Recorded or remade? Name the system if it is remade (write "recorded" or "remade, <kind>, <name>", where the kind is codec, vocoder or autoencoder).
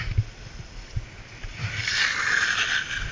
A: recorded